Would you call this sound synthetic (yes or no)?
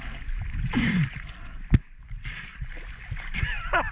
yes